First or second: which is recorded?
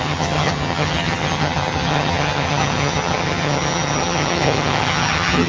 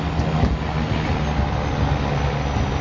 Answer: second